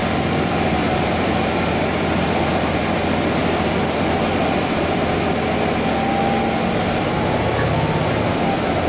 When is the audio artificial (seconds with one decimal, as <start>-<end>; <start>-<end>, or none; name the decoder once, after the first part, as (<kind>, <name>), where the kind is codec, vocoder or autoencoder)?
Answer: none